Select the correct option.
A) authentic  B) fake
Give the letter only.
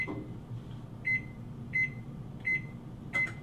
A